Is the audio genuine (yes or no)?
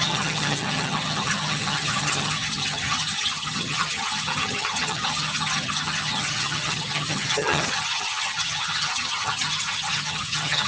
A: no